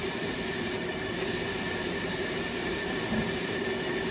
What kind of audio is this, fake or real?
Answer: fake